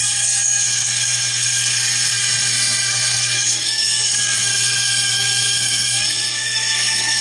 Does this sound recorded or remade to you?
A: remade